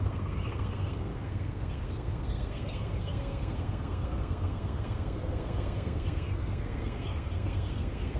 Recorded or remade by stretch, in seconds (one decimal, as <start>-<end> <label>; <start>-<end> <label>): 0.0-8.2 remade